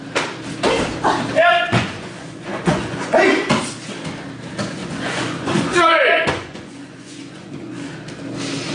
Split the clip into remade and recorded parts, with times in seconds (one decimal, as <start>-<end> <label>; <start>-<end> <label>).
0.0-1.4 recorded; 1.4-3.5 remade; 3.5-4.8 recorded; 4.8-7.9 remade; 7.9-8.7 recorded